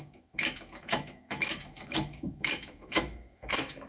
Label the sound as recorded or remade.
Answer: remade